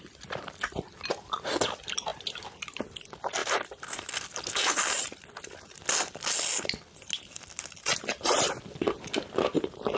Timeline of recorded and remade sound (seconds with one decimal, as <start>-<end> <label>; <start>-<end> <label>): 0.0-3.4 recorded; 3.4-4.1 remade; 4.1-10.0 recorded